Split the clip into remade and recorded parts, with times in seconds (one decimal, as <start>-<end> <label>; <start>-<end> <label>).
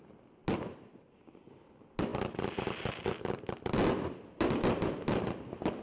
0.0-5.8 recorded